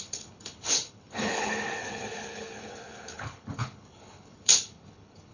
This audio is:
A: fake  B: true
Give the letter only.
A